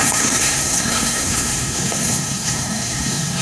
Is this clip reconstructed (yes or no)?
yes